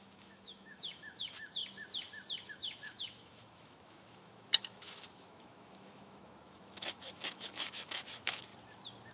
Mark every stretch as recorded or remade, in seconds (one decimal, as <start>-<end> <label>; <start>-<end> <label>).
0.0-1.6 remade; 1.6-2.5 recorded; 2.5-8.5 remade; 8.5-9.1 recorded